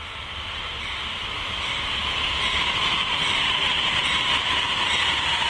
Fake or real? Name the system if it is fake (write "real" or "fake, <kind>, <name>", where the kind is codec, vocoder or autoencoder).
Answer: real